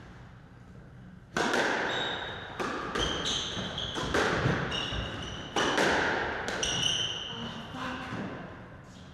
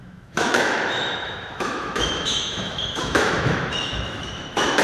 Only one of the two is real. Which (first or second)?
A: first